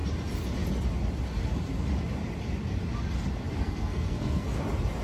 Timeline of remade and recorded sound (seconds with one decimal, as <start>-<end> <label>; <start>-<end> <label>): 0.0-3.6 recorded; 3.6-4.6 remade; 4.6-5.0 recorded